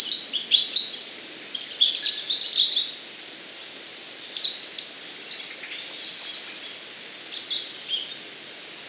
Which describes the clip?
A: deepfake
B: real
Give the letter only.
B